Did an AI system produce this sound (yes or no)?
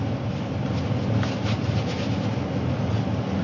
no